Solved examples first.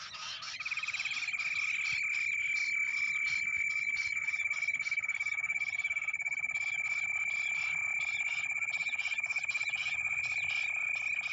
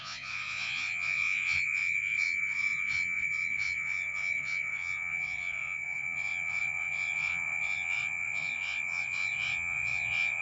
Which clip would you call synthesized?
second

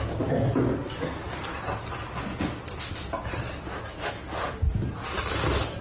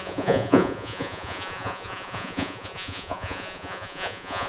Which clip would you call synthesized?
second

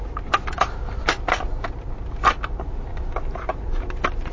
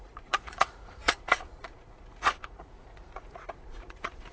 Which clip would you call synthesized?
second